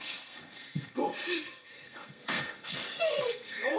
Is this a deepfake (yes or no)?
yes